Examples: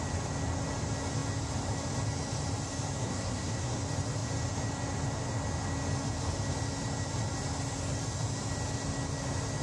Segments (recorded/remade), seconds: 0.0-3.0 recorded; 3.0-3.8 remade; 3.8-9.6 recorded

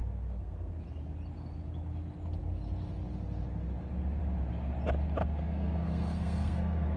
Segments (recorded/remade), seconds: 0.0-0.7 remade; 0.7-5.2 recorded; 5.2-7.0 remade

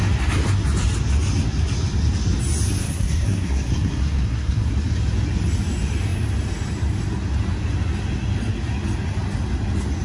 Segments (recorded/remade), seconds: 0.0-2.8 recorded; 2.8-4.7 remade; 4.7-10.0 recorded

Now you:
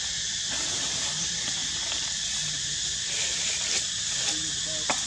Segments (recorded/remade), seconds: 0.0-5.1 recorded